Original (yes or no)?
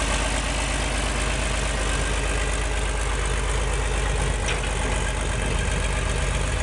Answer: yes